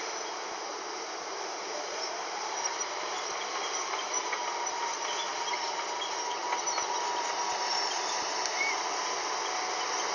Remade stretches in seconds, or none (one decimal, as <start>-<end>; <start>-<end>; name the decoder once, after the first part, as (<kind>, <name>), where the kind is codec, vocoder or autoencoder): 0.7-3.3 (vocoder, BigVGAN v2)